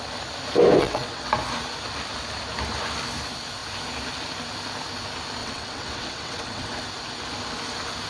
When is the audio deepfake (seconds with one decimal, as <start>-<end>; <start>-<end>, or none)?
0.8-1.3; 5.4-6.8